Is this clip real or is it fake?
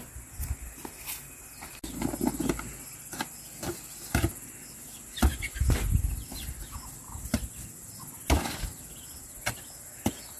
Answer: real